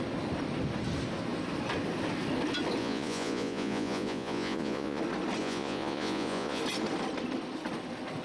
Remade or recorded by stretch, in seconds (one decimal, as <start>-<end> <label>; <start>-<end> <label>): 0.0-2.8 recorded; 2.8-5.0 remade; 5.0-5.4 recorded; 5.4-6.6 remade; 6.6-8.2 recorded